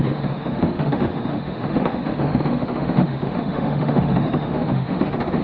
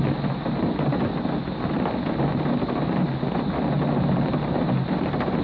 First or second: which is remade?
first